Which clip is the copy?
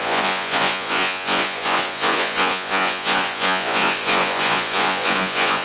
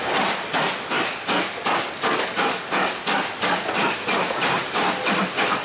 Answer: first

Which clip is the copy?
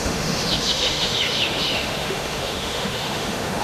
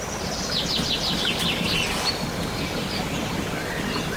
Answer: first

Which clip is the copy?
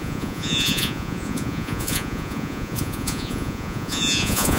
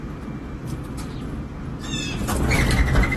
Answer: first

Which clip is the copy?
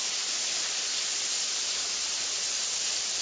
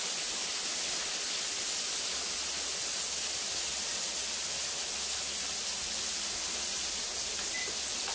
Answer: first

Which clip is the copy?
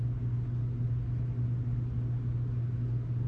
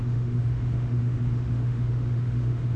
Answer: second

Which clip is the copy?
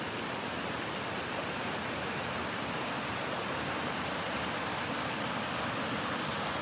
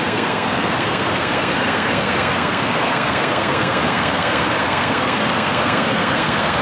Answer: second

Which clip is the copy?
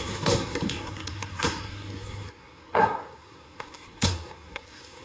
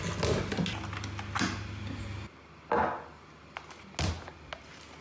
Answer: first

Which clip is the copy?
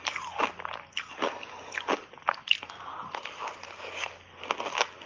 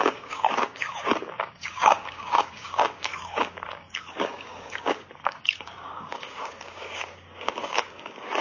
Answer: second